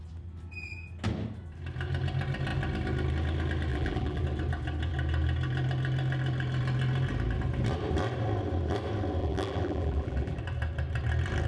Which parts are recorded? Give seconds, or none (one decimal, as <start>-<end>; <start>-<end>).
0.0-3.7; 4.2-9.2; 10.4-11.5